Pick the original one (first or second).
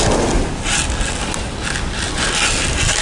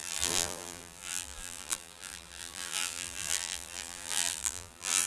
first